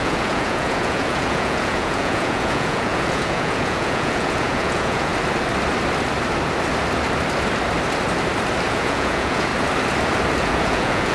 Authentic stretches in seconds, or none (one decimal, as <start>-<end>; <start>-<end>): 5.1-8.7; 9.5-10.4

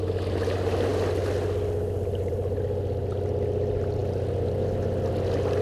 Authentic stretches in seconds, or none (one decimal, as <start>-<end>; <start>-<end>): 0.0-5.6